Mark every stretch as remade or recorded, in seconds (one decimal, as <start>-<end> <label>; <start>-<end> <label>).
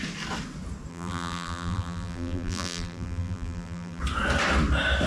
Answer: 0.0-0.9 recorded; 0.9-4.0 remade; 4.0-5.1 recorded